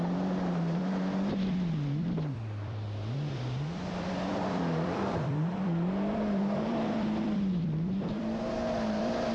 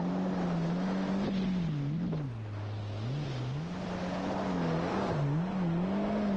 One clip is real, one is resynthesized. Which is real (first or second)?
second